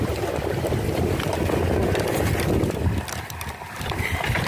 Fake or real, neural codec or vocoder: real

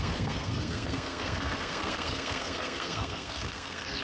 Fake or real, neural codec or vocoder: fake, codec, SNAC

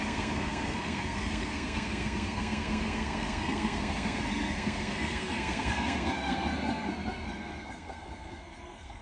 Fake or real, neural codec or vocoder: fake, codec, SNAC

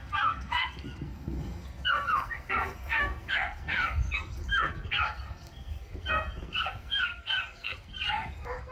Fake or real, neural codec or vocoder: fake, codec, SNAC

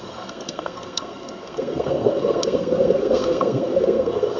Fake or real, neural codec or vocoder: fake, codec, SNAC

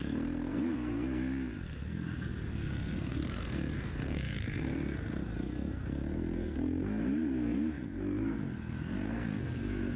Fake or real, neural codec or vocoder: fake, codec, SNAC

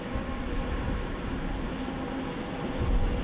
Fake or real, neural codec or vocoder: real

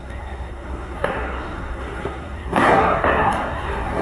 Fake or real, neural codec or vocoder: fake, codec, SNAC